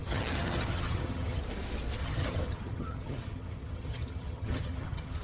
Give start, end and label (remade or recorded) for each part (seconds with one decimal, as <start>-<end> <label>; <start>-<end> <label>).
0.0-1.4 remade; 1.4-2.0 recorded; 2.0-5.2 remade